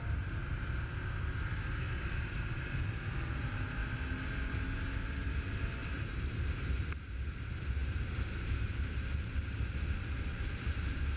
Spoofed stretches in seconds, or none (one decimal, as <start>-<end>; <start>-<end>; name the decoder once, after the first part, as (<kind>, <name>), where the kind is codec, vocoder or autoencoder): 0.0-0.4 (vocoder, BigVGAN v2); 2.0-3.8; 5.2-11.2